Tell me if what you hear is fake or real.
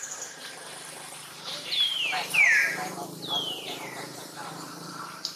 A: fake